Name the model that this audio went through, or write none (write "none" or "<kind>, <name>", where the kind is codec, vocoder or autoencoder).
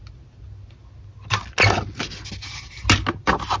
none